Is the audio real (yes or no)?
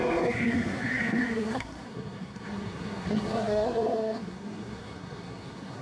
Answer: no